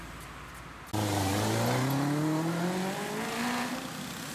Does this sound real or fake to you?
real